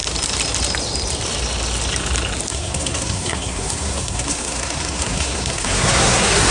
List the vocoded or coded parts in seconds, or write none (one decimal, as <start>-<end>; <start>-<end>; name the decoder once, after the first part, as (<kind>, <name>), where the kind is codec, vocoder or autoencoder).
2.5-6.5 (codec, SNAC)